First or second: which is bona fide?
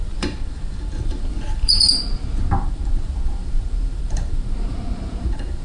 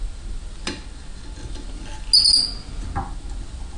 second